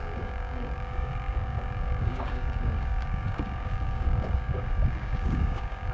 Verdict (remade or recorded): remade